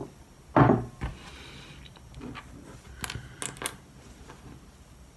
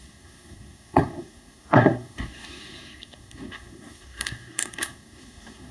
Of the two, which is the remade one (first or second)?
second